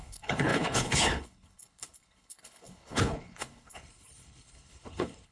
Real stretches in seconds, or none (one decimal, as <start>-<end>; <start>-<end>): none